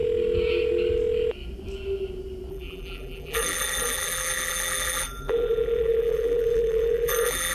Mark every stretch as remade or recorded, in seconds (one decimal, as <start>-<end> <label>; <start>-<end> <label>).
0.0-2.5 recorded; 2.5-7.5 remade